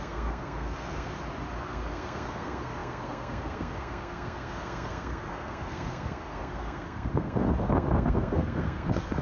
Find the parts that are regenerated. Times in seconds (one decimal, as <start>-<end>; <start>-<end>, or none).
0.0-1.1; 1.6-9.2